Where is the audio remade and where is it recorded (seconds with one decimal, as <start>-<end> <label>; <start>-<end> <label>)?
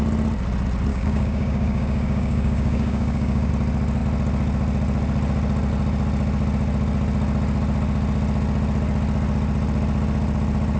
0.0-0.9 recorded; 0.9-3.5 remade; 3.5-10.8 recorded